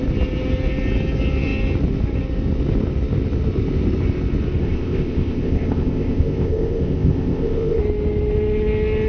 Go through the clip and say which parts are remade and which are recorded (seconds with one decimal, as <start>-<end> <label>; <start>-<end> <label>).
0.0-4.6 recorded; 4.6-7.8 remade; 7.8-9.1 recorded